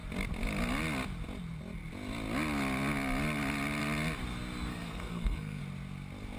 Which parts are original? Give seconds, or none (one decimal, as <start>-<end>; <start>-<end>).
0.0-4.7; 5.6-6.4